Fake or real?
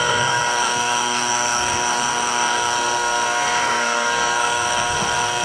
fake